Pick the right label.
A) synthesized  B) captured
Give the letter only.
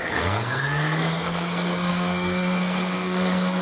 A